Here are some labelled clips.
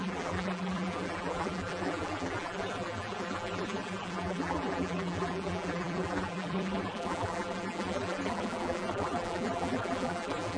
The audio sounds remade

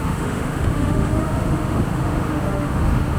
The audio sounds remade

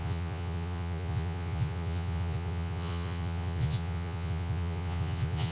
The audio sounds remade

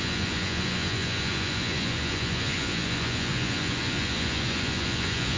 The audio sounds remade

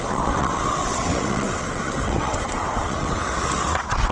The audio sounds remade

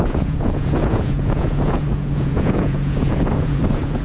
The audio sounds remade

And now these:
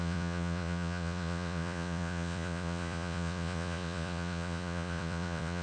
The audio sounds remade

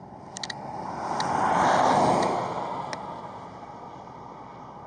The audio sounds recorded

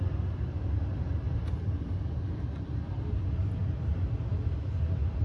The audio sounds recorded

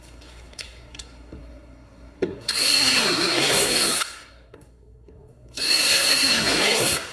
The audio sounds remade